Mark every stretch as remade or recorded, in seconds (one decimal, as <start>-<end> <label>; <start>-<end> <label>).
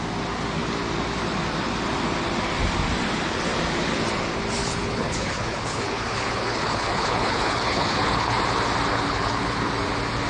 0.0-4.6 recorded; 4.6-8.4 remade; 8.4-8.9 recorded; 8.9-9.7 remade; 9.7-10.3 recorded